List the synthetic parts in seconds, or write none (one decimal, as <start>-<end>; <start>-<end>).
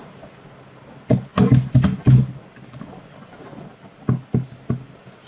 none